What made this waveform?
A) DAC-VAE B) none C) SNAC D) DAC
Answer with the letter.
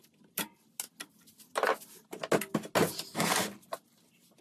B